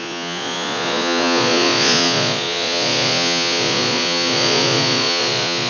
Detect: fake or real fake